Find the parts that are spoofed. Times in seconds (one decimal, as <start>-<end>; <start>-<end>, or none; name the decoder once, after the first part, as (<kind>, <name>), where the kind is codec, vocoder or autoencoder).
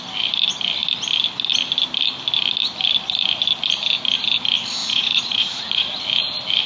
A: 4.8-6.0 (vocoder, Vocos)